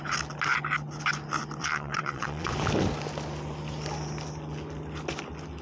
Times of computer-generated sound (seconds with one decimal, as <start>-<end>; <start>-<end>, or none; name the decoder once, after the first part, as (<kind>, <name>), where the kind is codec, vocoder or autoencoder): 1.6-2.5 (vocoder, WaveNeXt)